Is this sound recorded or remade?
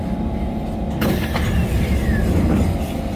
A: recorded